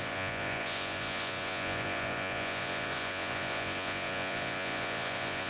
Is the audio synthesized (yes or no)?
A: yes